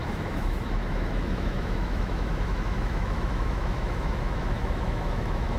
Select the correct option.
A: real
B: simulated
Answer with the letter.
B